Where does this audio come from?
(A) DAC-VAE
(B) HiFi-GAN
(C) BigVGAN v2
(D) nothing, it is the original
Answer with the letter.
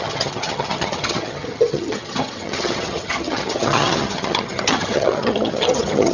B